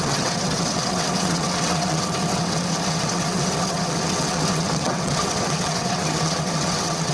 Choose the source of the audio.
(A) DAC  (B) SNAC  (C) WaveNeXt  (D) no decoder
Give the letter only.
C